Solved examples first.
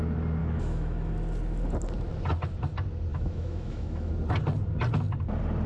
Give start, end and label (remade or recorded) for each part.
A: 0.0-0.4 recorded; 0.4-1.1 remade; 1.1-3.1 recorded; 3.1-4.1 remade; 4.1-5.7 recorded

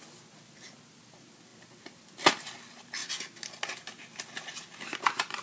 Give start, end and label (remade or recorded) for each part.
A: 0.0-5.4 recorded